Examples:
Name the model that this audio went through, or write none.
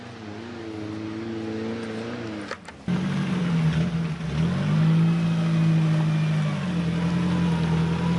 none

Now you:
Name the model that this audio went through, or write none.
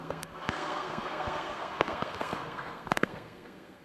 codec, SNAC